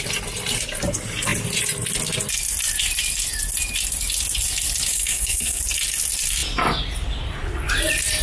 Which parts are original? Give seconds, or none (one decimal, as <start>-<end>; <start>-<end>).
0.0-4.9; 5.6-8.2